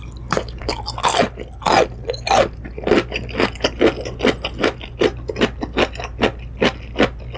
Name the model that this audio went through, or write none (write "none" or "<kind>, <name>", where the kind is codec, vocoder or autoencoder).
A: none